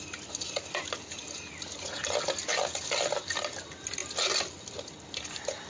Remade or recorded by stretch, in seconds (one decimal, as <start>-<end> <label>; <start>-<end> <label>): 0.0-5.7 recorded